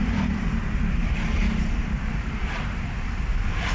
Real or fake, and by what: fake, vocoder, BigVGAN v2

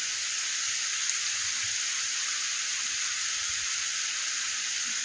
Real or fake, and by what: real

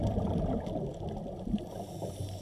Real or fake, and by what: real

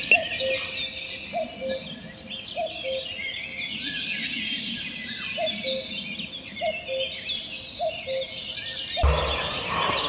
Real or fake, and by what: real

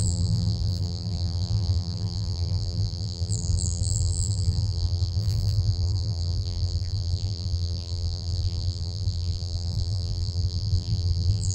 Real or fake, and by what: fake, vocoder, BigVGAN v2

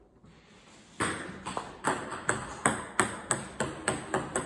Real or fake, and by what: real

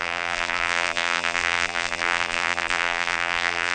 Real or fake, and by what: fake, vocoder, BigVGAN v2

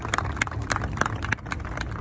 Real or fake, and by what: fake, vocoder, BigVGAN v2